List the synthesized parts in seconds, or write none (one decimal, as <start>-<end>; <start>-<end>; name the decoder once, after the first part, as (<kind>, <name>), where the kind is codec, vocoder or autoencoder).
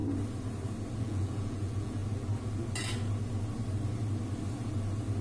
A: 1.0-2.0 (vocoder, Vocos)